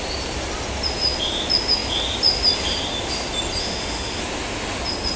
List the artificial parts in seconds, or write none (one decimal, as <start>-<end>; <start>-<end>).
3.6-4.2